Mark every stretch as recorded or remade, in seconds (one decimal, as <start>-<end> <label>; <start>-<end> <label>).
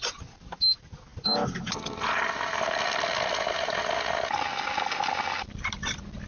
0.0-6.3 recorded